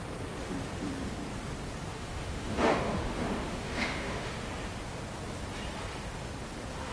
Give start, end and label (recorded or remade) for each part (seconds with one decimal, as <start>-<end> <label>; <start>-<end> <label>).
0.0-1.9 recorded; 1.9-4.3 remade; 4.3-6.9 recorded